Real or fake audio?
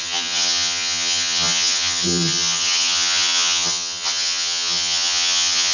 fake